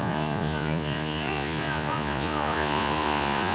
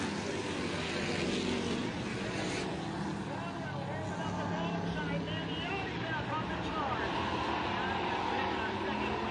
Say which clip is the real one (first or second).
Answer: second